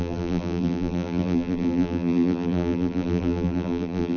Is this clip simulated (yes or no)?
yes